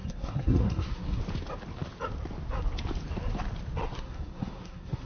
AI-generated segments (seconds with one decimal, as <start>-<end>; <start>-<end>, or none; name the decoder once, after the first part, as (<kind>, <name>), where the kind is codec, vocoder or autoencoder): 0.0-1.2 (codec, SNAC); 3.8-5.1